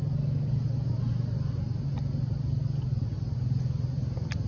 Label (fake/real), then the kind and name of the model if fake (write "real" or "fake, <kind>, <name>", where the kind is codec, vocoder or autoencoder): real